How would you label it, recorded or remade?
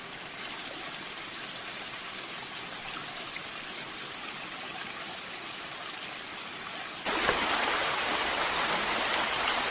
recorded